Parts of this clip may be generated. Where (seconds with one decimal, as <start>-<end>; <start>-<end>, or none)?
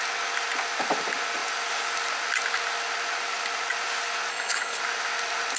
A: 4.3-4.8